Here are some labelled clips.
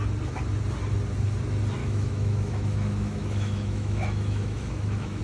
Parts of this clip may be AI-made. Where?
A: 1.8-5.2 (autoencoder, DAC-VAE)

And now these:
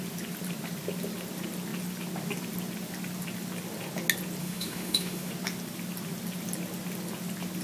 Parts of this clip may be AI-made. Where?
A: 4.4-5.3 (autoencoder, DAC-VAE)

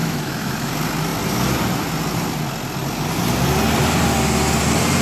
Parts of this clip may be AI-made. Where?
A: 0.0-0.7 (autoencoder, DAC-VAE)

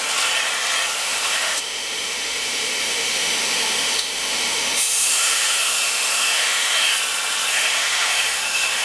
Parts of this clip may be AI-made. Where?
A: 1.0-6.9 (autoencoder, DAC-VAE); 7.5-8.8

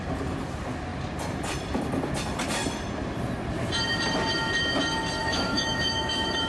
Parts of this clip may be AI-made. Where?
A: 5.2-6.5 (autoencoder, DAC-VAE)

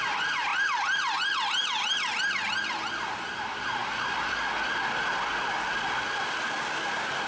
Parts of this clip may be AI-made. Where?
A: none

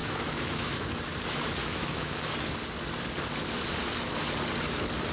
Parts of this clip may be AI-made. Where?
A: 0.0-1.0 (autoencoder, DAC-VAE); 1.6-2.3